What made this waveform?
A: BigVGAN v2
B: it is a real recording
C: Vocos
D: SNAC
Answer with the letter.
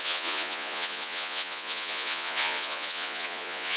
C